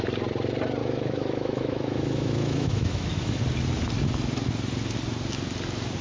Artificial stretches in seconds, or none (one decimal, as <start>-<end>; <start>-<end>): 0.8-3.4